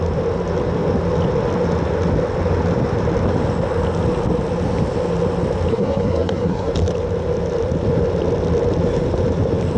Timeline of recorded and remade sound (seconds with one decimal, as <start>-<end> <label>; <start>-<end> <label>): 0.0-5.7 recorded; 5.7-6.7 remade; 6.7-9.8 recorded